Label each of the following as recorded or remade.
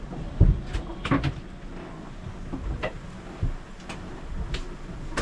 recorded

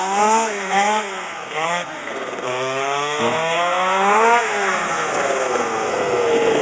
remade